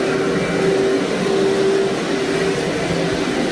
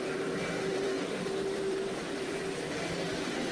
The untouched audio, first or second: first